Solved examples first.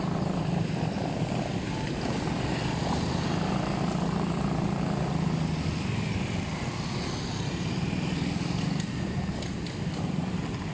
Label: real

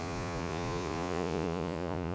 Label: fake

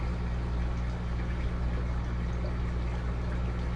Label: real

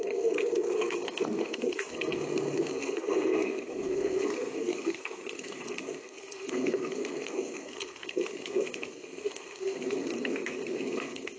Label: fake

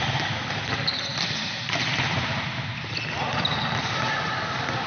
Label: real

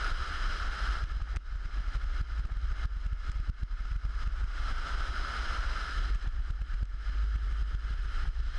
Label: real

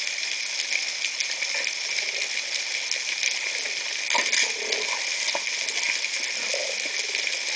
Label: real